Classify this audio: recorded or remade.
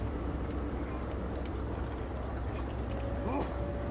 recorded